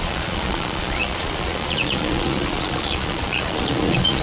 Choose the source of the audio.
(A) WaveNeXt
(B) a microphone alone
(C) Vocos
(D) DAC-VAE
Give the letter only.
C